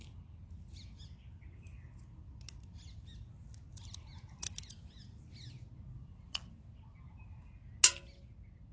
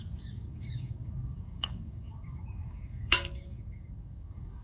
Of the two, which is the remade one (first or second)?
second